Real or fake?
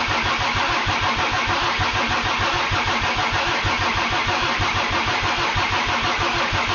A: real